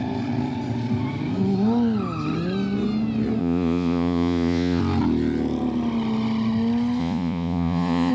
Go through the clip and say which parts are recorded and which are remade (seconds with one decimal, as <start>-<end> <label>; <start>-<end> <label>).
0.0-3.4 recorded; 3.4-4.8 remade; 4.8-7.0 recorded; 7.0-8.1 remade